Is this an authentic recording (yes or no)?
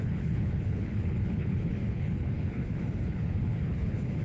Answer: no